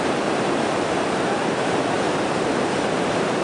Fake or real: fake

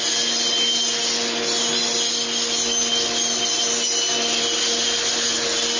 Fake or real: real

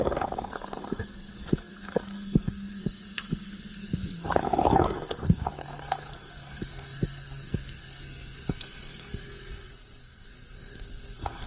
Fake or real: fake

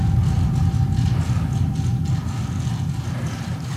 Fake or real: real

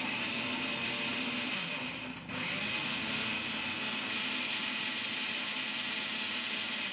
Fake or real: real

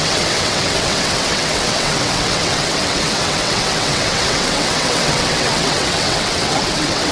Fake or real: fake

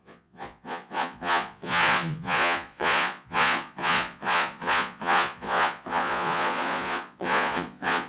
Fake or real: fake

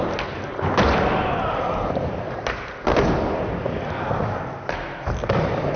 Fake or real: real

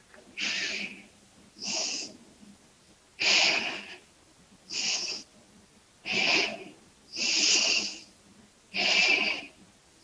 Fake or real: real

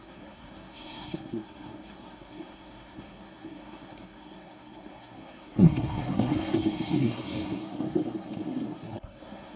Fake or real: fake